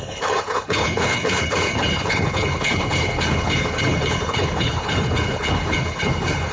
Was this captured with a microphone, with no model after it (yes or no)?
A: no